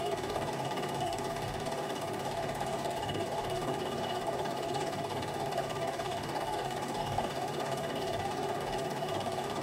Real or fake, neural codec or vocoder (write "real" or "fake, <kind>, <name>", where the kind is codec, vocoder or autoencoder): fake, codec, DAC